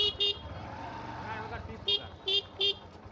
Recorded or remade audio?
recorded